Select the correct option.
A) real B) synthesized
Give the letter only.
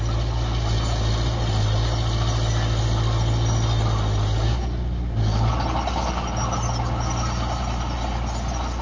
A